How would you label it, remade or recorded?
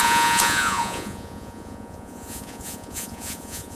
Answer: remade